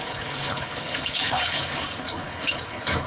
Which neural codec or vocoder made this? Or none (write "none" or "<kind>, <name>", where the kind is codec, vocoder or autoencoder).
codec, HILCodec